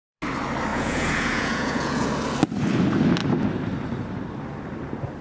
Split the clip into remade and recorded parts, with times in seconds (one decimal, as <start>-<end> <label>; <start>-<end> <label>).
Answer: 0.0-0.7 recorded; 0.7-2.1 remade; 2.1-5.2 recorded